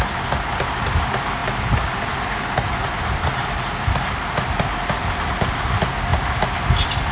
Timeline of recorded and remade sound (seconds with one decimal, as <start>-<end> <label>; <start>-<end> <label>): 0.0-7.1 recorded